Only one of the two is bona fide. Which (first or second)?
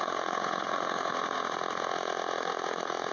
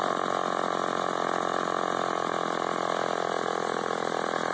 second